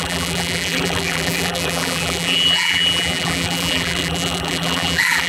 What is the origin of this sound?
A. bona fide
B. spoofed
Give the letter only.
B